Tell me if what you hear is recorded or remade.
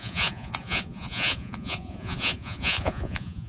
remade